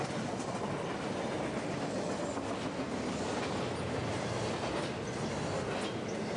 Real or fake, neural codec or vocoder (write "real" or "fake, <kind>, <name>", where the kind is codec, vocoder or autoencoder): real